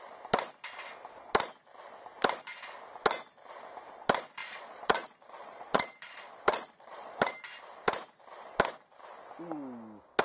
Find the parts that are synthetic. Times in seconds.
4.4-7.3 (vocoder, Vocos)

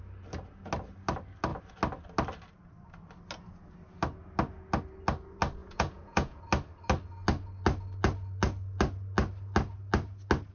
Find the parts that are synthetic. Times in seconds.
5.6-6.4 (vocoder, Vocos)

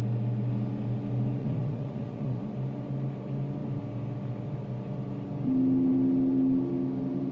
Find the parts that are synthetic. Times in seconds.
1.4-2.4 (vocoder, Vocos)

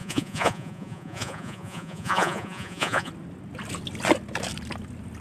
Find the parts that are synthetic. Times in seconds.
0.0-3.1 (vocoder, Vocos)

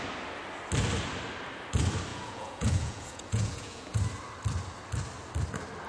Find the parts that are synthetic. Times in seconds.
2.1-4.0 (vocoder, Vocos)

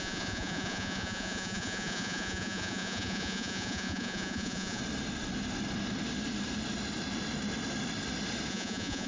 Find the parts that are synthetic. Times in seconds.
0.0-4.8 (vocoder, Vocos); 8.5-9.1